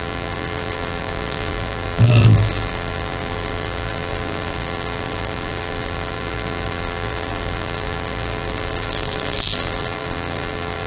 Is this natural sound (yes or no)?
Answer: no